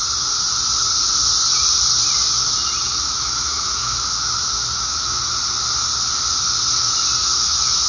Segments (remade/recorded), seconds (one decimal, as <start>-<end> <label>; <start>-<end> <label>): 0.0-2.8 recorded; 2.8-5.2 remade; 5.2-7.2 recorded; 7.2-7.9 remade

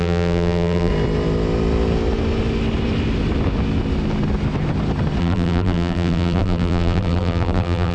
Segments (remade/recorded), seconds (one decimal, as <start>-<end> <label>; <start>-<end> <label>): 0.0-0.9 remade; 0.9-5.2 recorded; 5.2-7.9 remade

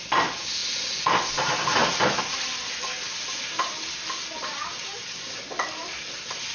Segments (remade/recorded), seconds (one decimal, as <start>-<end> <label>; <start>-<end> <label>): 0.0-6.5 recorded